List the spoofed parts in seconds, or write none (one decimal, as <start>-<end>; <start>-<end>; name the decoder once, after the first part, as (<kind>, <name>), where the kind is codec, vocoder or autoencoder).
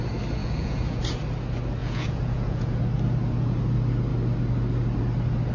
0.4-1.0 (vocoder, Vocos); 1.8-2.8